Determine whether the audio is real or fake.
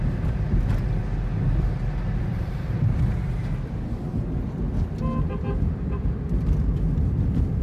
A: real